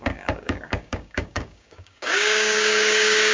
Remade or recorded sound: remade